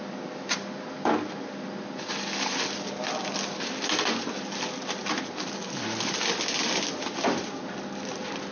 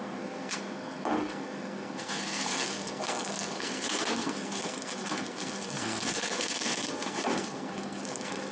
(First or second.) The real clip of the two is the first